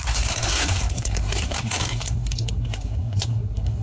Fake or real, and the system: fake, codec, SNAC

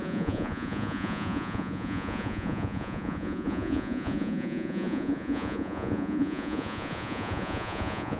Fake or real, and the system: fake, vocoder, Vocos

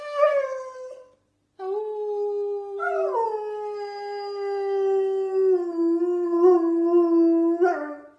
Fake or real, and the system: real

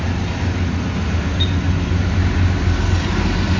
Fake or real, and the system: real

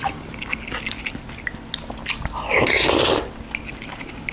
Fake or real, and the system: real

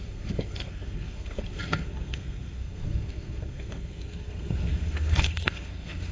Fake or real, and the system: fake, codec, SNAC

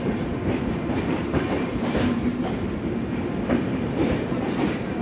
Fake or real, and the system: fake, vocoder, BigVGAN v2